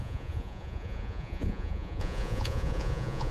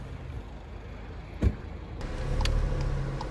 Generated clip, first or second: first